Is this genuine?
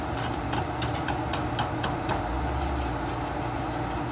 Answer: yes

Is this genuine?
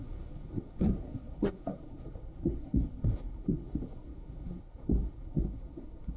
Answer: no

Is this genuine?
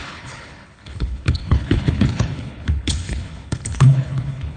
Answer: no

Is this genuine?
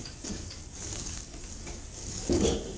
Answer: no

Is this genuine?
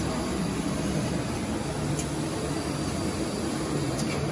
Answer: yes